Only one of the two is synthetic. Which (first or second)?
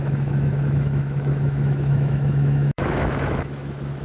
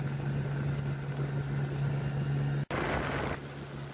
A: first